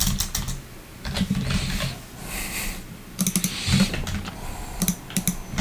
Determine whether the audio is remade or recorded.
recorded